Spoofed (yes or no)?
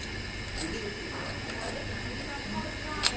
no